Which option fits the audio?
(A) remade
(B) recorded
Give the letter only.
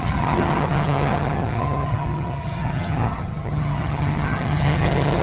A